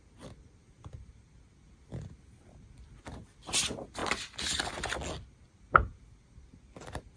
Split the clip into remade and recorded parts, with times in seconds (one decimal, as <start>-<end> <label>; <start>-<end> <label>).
0.0-0.6 recorded; 0.6-1.1 remade; 1.1-7.2 recorded

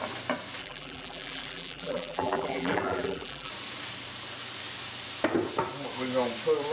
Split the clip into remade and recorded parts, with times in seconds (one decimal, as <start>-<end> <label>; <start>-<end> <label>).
0.0-0.6 recorded; 0.6-3.5 remade; 3.5-6.7 recorded